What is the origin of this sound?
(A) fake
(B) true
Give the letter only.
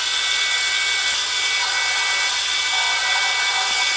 B